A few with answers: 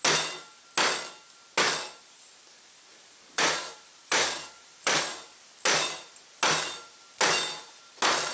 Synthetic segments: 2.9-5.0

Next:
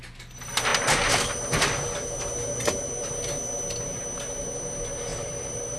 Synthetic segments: 5.1-5.8

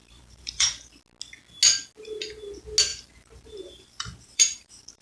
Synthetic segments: 0.0-0.9; 2.9-5.0